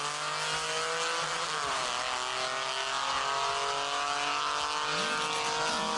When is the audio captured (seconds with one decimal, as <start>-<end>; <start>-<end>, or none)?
0.0-6.0